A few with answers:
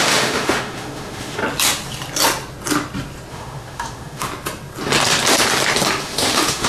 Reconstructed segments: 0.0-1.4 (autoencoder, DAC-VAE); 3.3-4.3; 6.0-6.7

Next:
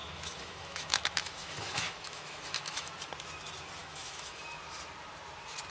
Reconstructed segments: 0.0-2.9 (autoencoder, DAC-VAE); 3.8-4.4

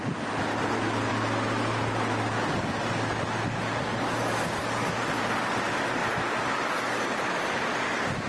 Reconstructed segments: none

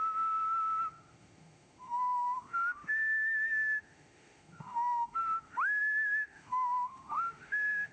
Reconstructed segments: 0.0-7.9 (autoencoder, DAC-VAE)

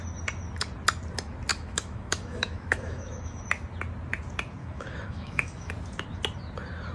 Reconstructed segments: 1.5-3.4 (autoencoder, DAC-VAE); 4.6-5.7

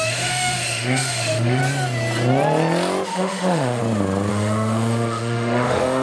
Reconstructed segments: 0.0-1.6 (autoencoder, DAC-VAE); 3.1-3.8; 4.3-6.0

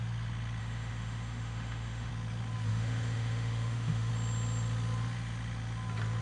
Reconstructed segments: 0.6-2.1 (autoencoder, DAC-VAE); 2.7-4.1